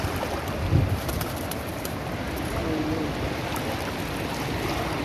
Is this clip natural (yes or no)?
yes